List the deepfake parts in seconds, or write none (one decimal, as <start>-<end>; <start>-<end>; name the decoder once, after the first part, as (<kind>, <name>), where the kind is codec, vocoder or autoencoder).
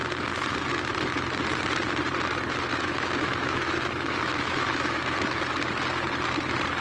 2.7-5.4 (autoencoder, DAC-VAE)